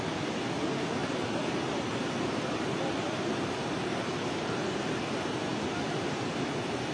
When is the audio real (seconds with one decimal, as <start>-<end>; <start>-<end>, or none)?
5.5-6.1